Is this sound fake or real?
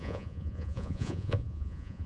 fake